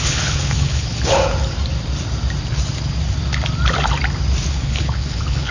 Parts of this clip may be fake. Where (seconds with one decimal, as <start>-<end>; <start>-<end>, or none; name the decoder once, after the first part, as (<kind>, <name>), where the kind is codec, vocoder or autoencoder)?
0.0-1.2 (codec, HILCodec); 4.5-5.5